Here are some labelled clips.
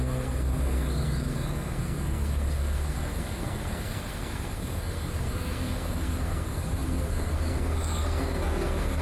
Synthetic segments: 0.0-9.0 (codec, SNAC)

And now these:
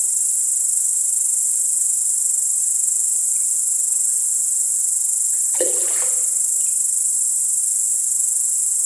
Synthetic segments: 1.3-2.1 (vocoder, Vocos); 2.6-6.2; 7.6-8.9